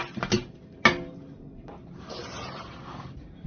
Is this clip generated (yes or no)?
no